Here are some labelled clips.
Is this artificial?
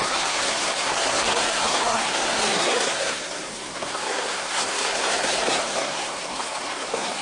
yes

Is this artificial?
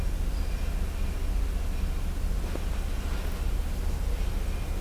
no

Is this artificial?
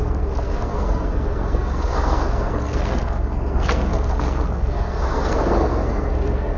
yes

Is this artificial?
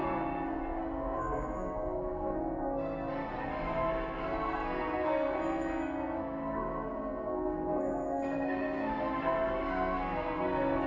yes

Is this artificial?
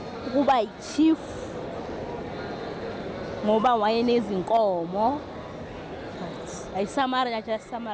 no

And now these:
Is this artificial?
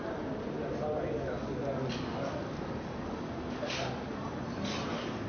no